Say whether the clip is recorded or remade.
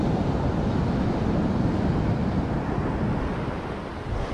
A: recorded